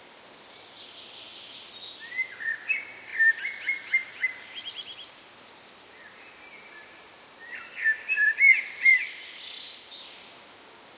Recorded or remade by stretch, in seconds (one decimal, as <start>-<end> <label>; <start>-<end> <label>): 0.0-11.0 recorded